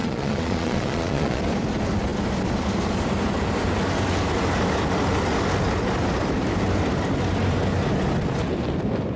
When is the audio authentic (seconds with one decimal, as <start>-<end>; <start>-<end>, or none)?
1.4-9.2